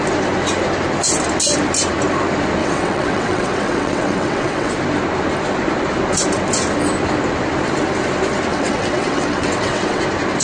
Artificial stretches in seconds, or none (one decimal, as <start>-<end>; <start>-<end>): 2.6-4.7; 8.5-10.0